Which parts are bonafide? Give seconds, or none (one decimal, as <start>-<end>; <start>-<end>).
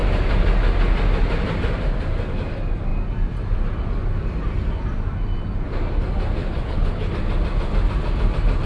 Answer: 0.0-6.4; 7.1-8.7